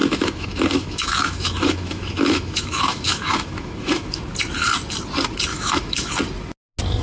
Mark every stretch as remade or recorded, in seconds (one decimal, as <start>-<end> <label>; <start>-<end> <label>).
0.0-4.2 remade; 4.2-5.5 recorded; 5.5-6.1 remade; 6.1-7.0 recorded

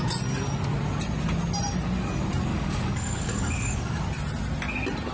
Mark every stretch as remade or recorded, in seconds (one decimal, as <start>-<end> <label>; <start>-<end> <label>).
0.0-2.5 recorded; 2.5-4.0 remade; 4.0-5.1 recorded

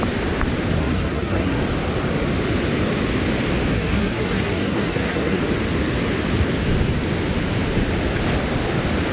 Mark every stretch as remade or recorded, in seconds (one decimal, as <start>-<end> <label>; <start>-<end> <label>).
0.0-0.8 recorded; 0.8-1.6 remade; 1.6-3.7 recorded; 3.7-5.4 remade; 5.4-9.1 recorded

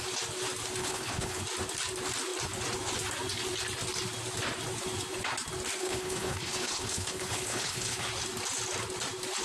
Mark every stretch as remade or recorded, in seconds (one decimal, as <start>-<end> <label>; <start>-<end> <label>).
0.0-0.8 recorded; 0.8-1.4 remade; 1.4-5.8 recorded; 5.8-8.1 remade; 8.1-9.4 recorded

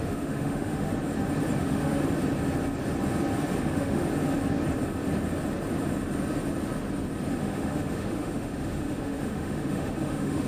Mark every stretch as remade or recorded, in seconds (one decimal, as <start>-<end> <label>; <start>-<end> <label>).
0.0-0.9 remade; 0.9-1.6 recorded; 1.6-2.0 remade; 2.0-3.6 recorded; 3.6-4.0 remade; 4.0-7.4 recorded; 7.4-10.5 remade

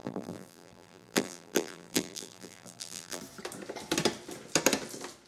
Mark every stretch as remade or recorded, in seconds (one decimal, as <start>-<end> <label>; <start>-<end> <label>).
0.0-3.2 remade; 3.2-5.3 recorded

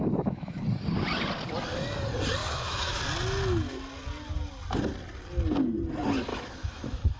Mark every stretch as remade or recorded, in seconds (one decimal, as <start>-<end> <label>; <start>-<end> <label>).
0.0-0.6 remade; 0.6-2.4 recorded; 2.4-3.0 remade; 3.0-6.3 recorded; 6.3-7.2 remade

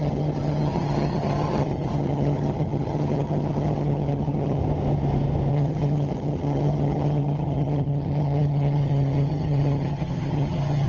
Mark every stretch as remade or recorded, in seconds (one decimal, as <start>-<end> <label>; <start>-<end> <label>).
0.0-4.6 remade; 4.6-5.5 recorded; 5.5-10.9 remade